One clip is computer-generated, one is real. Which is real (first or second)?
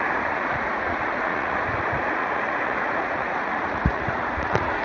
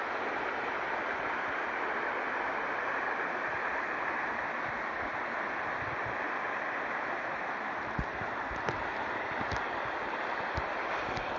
second